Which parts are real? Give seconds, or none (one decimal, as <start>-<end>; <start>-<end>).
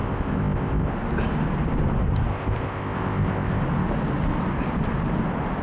0.9-2.3; 3.6-5.6